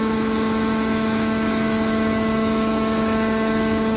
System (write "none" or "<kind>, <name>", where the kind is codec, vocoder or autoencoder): autoencoder, DAC-VAE